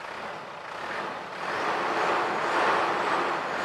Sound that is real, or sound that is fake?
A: real